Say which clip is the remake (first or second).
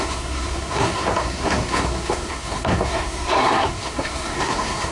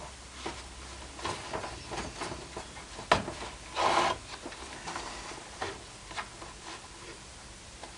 first